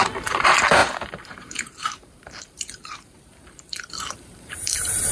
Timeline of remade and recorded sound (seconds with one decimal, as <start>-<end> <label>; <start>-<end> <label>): 0.0-5.1 remade